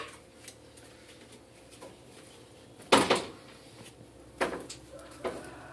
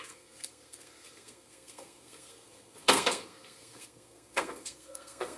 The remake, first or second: second